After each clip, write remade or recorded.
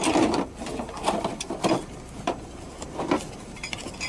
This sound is remade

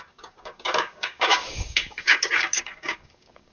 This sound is remade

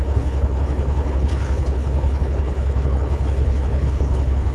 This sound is remade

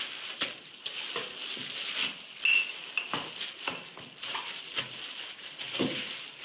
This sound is recorded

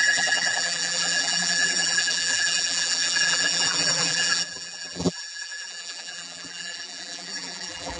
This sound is remade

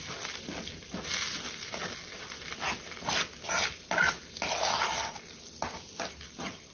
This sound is recorded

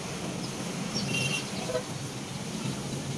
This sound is recorded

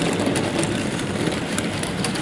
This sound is remade